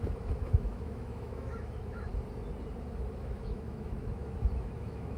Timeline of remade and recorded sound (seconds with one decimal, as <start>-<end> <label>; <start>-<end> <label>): 0.0-2.1 remade; 2.1-3.2 recorded; 3.2-5.2 remade